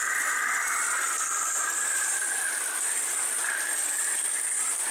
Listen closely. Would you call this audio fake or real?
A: real